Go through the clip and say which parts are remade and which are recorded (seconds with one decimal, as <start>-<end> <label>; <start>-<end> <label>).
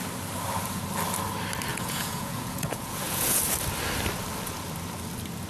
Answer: 0.0-1.7 recorded; 1.7-3.4 remade; 3.4-5.5 recorded